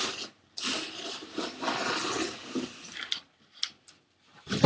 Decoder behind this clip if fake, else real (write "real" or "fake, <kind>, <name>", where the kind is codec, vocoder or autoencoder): real